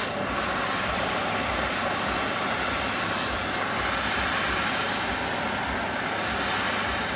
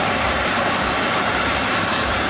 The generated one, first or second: second